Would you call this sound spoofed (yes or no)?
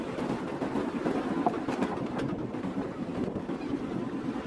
yes